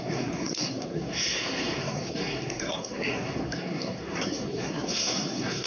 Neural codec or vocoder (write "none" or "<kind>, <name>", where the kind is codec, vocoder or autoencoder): codec, SNAC